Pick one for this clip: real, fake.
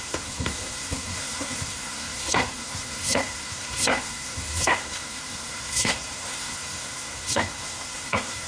fake